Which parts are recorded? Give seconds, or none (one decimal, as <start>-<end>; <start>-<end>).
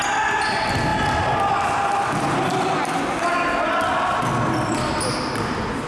0.0-5.9